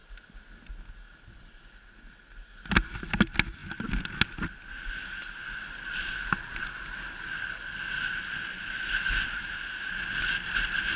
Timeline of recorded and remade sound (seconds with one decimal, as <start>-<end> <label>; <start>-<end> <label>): 0.0-0.7 remade; 0.7-11.0 recorded